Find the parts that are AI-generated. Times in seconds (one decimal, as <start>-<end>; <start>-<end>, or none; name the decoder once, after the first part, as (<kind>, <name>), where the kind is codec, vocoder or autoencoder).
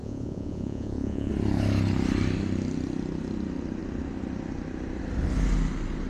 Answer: 0.0-1.3 (vocoder, Vocos)